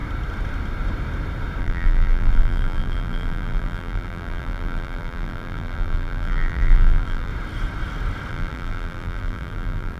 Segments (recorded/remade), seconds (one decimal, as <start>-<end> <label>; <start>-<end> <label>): 0.0-1.6 recorded; 1.6-7.3 remade; 7.3-8.3 recorded; 8.3-10.0 remade